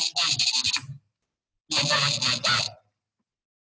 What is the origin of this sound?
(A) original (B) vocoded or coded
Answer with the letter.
A